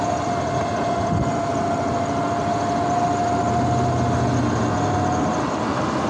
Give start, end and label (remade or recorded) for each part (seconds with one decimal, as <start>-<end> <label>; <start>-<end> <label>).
0.0-6.1 recorded